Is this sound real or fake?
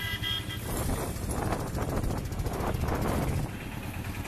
real